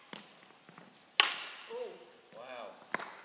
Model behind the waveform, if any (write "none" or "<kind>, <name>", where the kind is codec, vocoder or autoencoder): none